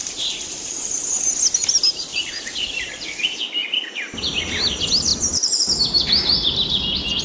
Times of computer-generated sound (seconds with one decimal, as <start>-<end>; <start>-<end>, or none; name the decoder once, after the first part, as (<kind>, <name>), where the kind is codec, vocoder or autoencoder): 0.0-0.8 (vocoder, BigVGAN v2); 2.1-2.9; 5.1-5.6